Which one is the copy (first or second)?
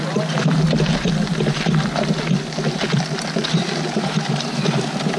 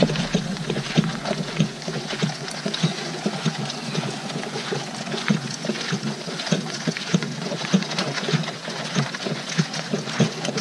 second